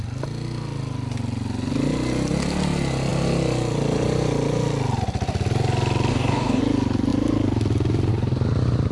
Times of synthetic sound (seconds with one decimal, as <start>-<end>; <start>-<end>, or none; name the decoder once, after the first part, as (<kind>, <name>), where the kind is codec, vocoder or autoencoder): 6.1-6.6 (codec, DAC)